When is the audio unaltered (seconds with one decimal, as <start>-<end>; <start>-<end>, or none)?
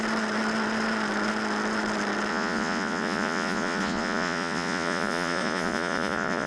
0.0-2.3